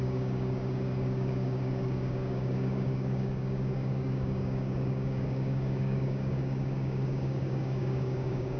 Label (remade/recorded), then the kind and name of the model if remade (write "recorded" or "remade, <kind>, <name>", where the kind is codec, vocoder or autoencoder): remade, codec, DAC